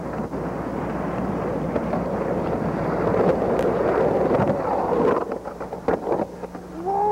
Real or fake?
real